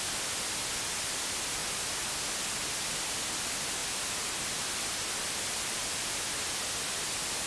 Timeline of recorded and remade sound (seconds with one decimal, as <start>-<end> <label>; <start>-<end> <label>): 0.0-7.5 recorded